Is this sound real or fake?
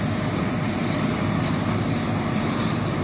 real